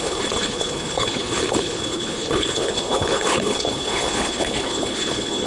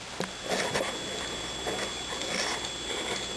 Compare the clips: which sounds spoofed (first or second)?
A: first